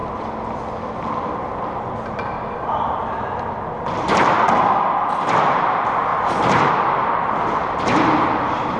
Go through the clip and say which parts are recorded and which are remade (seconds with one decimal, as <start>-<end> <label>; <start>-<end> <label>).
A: 0.0-6.1 recorded; 6.1-6.7 remade; 6.7-7.6 recorded; 7.6-8.8 remade